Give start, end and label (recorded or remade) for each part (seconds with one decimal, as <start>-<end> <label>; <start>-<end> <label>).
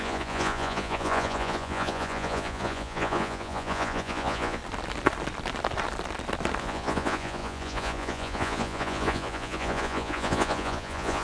0.0-4.6 remade; 4.6-6.6 recorded; 6.6-11.2 remade